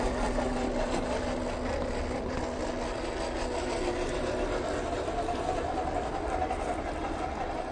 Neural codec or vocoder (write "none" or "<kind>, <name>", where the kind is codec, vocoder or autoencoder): none